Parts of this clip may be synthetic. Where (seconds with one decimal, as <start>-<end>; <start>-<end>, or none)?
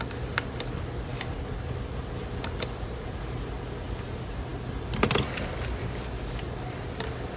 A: none